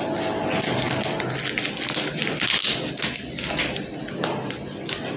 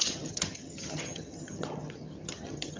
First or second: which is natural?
first